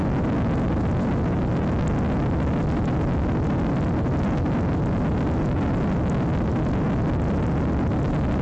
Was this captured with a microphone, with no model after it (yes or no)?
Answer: yes